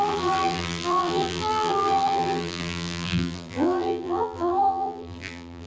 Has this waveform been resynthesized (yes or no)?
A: yes